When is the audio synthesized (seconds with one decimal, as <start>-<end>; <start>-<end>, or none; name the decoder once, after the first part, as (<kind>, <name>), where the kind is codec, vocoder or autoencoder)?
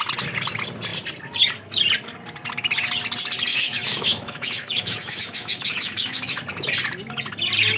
3.5-6.4 (autoencoder, DAC-VAE)